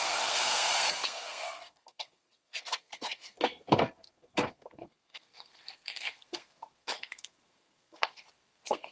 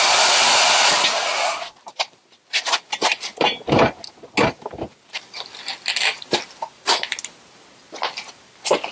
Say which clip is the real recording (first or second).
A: second